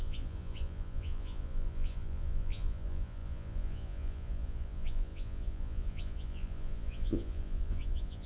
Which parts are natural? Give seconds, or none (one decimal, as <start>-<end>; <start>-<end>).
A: none